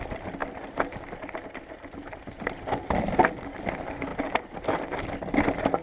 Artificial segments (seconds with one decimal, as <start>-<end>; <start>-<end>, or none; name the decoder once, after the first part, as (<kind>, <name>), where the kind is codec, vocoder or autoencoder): none